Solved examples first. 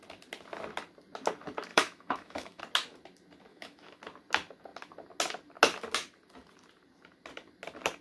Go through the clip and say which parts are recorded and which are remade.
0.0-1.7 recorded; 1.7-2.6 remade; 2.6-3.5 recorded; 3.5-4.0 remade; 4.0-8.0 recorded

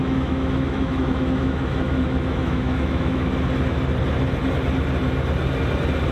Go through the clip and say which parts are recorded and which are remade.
0.0-3.3 remade; 3.3-6.1 recorded

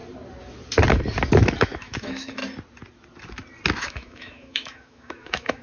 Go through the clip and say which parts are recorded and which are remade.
0.0-1.6 recorded; 1.6-2.4 remade; 2.4-3.8 recorded; 3.8-5.6 remade

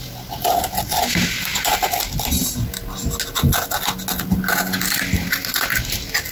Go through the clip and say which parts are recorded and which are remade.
0.0-6.3 recorded

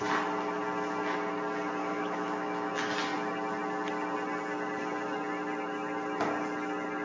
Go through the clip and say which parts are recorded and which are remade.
0.0-1.8 recorded; 1.8-2.7 remade; 2.7-7.0 recorded